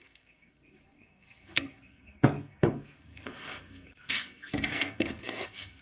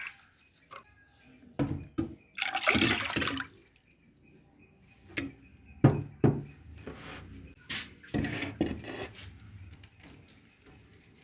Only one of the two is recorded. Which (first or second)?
second